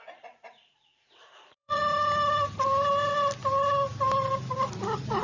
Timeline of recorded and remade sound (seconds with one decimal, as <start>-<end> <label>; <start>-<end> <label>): 0.0-1.8 remade; 1.8-5.2 recorded